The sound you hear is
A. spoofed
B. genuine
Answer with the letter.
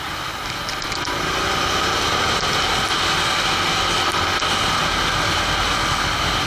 B